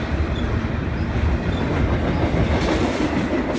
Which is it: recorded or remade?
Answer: recorded